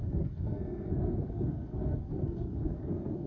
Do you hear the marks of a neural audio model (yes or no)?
yes